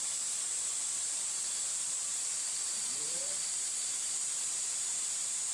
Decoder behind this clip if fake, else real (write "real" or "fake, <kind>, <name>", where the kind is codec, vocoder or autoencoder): fake, vocoder, BigVGAN v2